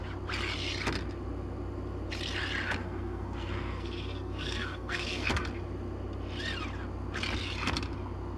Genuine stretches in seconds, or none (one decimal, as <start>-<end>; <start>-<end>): 0.0-2.8; 5.3-8.4